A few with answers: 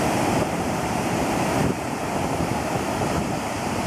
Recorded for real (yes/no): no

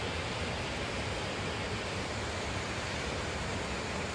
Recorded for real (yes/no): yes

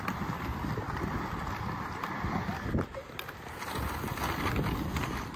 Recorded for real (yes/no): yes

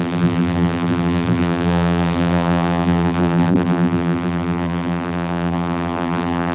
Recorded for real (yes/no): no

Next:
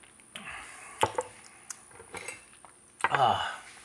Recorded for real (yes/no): yes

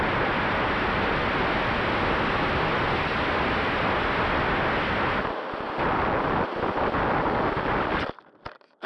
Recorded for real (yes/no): yes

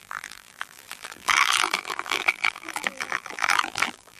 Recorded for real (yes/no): no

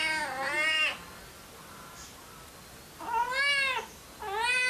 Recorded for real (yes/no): yes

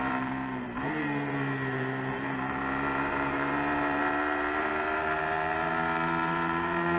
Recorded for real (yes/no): no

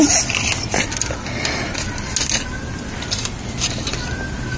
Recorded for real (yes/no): yes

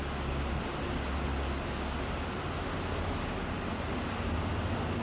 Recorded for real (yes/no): yes